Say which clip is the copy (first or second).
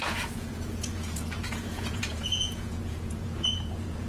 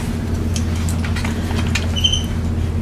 first